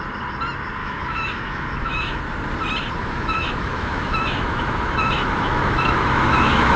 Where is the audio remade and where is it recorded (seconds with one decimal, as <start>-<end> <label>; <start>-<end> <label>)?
0.0-0.8 recorded; 0.8-2.2 remade; 2.2-3.0 recorded; 3.0-6.8 remade